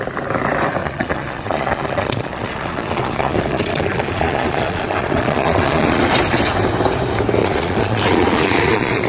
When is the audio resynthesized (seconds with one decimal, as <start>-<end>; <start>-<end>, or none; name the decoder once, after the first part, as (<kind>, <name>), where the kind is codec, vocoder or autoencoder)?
0.8-6.0 (vocoder, Vocos); 7.4-9.1